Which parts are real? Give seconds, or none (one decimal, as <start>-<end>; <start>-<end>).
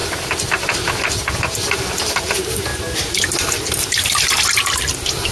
0.0-5.3